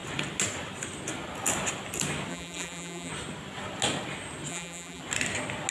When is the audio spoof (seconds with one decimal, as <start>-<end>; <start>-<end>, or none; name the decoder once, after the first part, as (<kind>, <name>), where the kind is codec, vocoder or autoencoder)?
2.3-3.1 (vocoder, BigVGAN v2); 4.5-5.0

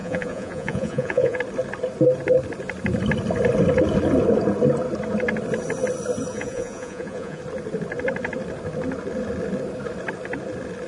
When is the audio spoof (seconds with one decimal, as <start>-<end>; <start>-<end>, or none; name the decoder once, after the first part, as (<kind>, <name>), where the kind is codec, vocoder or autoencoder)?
0.0-1.4 (vocoder, Vocos); 6.3-7.4

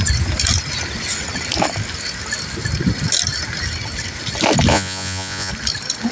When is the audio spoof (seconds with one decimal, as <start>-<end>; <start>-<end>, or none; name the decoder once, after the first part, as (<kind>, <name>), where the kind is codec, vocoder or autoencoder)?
4.7-5.5 (vocoder, Vocos)

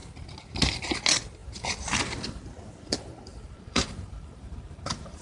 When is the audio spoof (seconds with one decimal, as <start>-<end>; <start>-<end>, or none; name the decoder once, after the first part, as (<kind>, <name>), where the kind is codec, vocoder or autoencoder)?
3.3-5.2 (vocoder, BigVGAN v2)

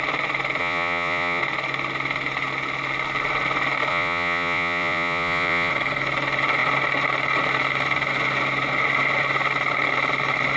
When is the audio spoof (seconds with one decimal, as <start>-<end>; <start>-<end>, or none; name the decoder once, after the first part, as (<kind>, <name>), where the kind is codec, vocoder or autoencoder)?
0.6-1.4 (vocoder, Vocos); 3.9-5.7